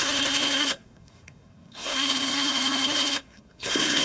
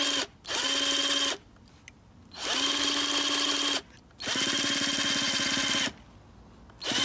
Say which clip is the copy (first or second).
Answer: first